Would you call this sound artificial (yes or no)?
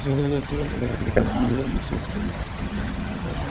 yes